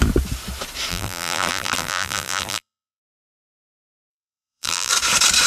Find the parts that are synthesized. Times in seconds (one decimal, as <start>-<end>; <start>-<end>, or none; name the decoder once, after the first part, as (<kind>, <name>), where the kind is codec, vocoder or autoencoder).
0.9-3.0 (vocoder, BigVGAN v2); 4.1-4.9